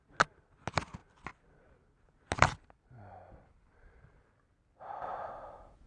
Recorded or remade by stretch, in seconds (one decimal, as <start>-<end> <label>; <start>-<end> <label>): 0.0-5.9 recorded